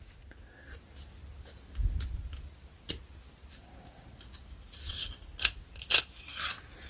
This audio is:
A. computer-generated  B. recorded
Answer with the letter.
B